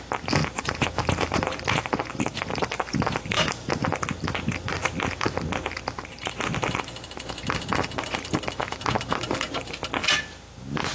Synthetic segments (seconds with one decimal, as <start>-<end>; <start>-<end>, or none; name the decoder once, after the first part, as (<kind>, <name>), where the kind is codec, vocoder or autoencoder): 0.4-4.3 (vocoder, BigVGAN v2)